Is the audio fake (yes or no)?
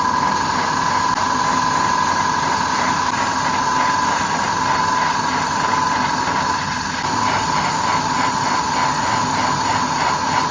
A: no